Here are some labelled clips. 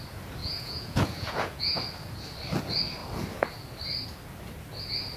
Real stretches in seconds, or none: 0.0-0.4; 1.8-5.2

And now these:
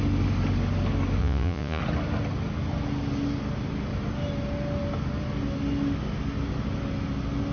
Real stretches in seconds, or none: 0.0-1.2; 1.8-7.5

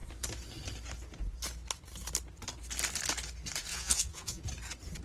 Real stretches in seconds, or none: 0.0-3.7; 4.4-5.0

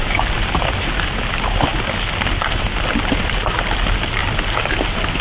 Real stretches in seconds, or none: 0.0-5.2

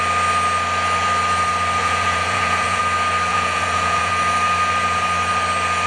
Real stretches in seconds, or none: 0.0-1.8; 2.8-3.3; 4.1-5.9

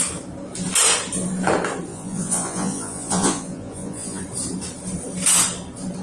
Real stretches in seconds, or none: 0.0-1.9; 4.2-6.0

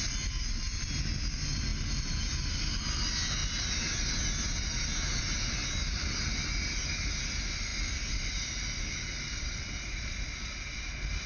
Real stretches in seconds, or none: 0.0-11.3